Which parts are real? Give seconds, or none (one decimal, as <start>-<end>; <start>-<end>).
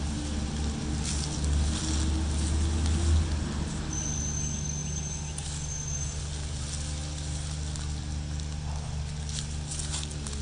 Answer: 0.0-10.4